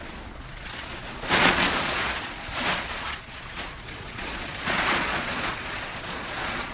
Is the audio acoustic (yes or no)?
no